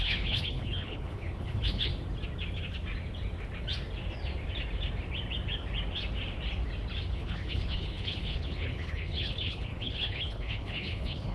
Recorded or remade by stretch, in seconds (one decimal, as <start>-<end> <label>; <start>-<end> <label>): 0.0-1.9 remade; 1.9-7.1 recorded; 7.1-11.3 remade